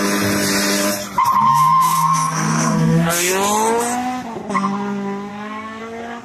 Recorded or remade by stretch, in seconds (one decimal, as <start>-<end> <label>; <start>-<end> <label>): 0.0-1.5 recorded; 1.5-3.3 remade; 3.3-5.3 recorded; 5.3-5.8 remade; 5.8-6.2 recorded